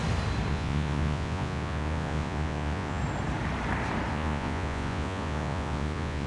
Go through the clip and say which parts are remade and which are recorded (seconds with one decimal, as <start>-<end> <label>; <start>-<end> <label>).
0.0-0.5 recorded; 0.5-3.0 remade; 3.0-4.1 recorded; 4.1-6.3 remade